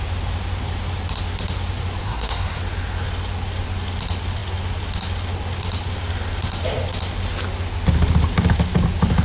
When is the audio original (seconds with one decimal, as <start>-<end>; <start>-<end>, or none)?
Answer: 0.0-2.0; 2.6-9.2